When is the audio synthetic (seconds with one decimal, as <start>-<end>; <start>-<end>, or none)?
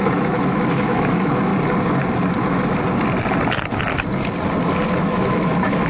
0.0-1.5; 5.0-5.9